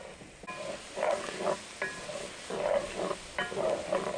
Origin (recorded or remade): recorded